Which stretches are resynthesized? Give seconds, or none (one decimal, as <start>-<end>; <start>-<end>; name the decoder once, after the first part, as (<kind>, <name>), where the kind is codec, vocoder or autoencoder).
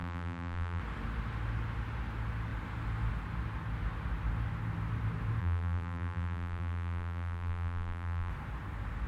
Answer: 0.0-0.8 (vocoder, BigVGAN v2); 5.4-8.3